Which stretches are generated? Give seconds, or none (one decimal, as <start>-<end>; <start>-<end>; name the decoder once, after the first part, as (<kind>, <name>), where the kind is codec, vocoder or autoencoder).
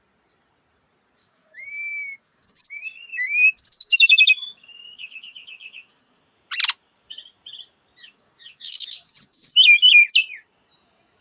1.2-6.2 (codec, DAC); 8.0-10.0